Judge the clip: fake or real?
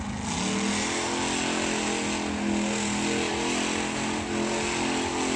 real